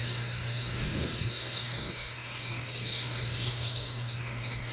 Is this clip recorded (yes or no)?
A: no